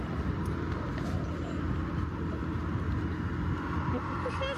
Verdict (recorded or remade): recorded